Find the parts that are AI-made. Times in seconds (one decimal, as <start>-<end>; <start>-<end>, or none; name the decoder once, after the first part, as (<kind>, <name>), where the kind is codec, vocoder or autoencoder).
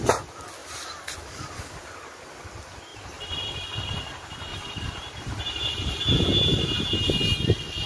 0.6-1.7 (vocoder, BigVGAN v2); 2.9-3.5; 4.5-6.1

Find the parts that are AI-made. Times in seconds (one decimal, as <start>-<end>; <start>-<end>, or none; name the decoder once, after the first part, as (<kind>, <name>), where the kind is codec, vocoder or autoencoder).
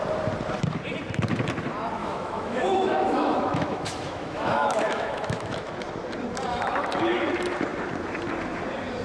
2.0-5.7 (autoencoder, DAC-VAE); 6.5-7.3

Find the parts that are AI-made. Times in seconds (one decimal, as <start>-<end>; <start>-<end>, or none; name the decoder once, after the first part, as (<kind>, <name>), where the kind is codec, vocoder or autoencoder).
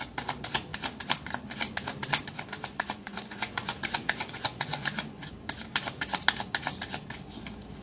2.7-5.3 (vocoder, Vocos)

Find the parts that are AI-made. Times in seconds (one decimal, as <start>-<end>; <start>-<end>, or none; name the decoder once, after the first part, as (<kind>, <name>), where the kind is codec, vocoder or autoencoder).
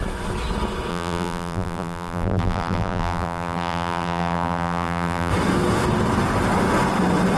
0.9-5.3 (vocoder, BigVGAN v2)